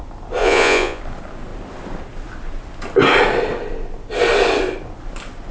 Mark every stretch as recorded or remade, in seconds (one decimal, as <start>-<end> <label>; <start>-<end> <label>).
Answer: 0.0-0.4 recorded; 0.4-1.0 remade; 1.0-5.5 recorded